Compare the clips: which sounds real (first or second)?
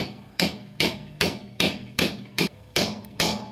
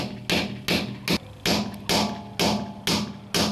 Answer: second